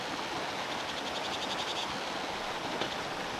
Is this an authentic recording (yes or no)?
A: yes